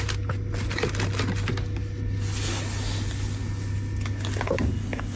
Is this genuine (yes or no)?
yes